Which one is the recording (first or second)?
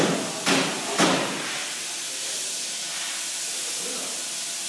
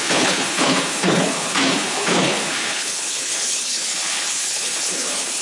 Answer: first